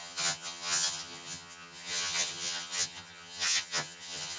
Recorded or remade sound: remade